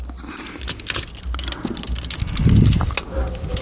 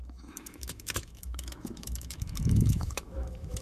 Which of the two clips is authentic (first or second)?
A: first